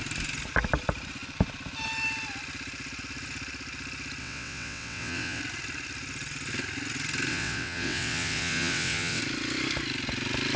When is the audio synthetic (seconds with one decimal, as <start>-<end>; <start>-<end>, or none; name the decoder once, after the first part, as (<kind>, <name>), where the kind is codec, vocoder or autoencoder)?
4.2-5.4 (vocoder, WaveNeXt); 7.3-9.2